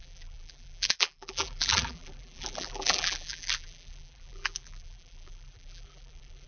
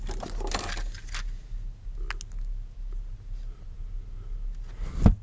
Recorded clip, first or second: second